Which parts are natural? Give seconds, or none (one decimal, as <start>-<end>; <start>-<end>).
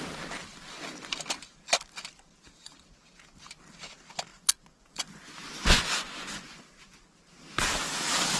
0.0-4.3; 6.6-8.4